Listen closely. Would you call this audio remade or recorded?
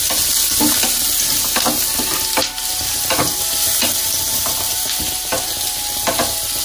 recorded